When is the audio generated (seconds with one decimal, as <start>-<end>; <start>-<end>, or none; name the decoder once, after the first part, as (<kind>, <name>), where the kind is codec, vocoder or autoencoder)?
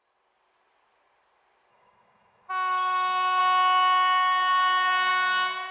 1.7-3.4 (autoencoder, DAC-VAE)